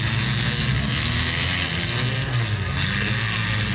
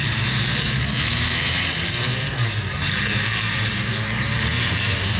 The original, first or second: first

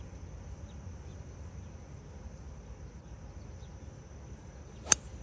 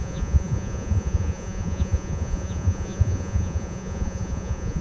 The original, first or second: first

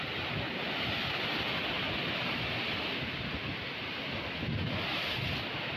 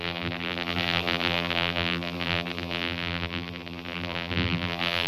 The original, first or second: first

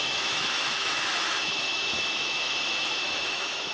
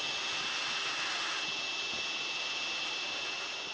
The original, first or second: second